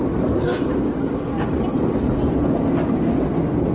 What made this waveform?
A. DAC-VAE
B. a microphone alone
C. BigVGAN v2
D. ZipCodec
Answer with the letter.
B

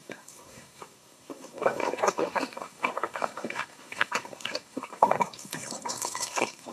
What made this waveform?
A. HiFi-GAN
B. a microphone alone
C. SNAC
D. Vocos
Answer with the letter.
C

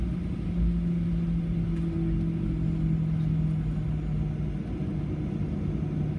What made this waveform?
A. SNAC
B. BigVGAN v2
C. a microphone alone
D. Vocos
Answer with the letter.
C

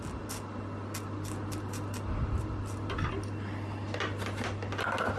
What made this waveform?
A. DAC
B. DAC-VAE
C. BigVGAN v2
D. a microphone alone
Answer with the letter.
D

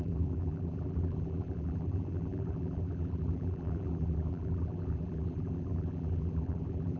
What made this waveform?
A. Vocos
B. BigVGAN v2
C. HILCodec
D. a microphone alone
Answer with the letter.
B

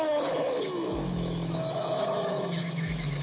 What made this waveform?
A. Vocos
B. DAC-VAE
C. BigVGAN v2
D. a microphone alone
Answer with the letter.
B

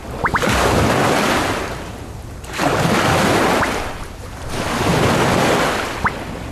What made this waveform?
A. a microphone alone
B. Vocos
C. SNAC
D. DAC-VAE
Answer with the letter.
A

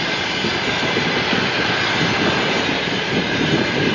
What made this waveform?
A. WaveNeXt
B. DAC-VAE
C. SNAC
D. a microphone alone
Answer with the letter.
D